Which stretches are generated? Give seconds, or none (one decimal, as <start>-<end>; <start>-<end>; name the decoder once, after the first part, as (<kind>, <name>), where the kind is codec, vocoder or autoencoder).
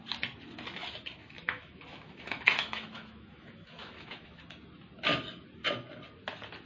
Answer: 1.2-4.4 (autoencoder, DAC-VAE)